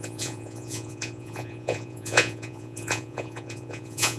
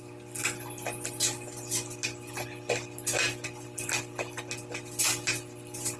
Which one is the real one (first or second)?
second